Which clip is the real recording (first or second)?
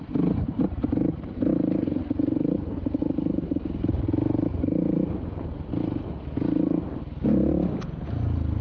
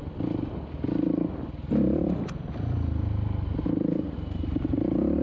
first